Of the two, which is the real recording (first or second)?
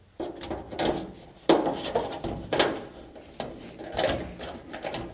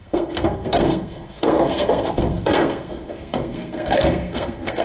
first